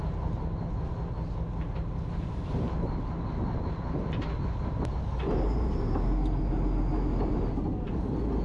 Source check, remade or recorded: recorded